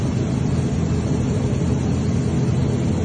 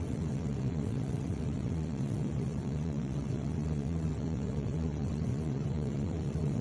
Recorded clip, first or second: first